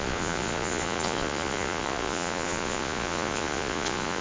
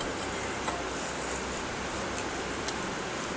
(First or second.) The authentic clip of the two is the second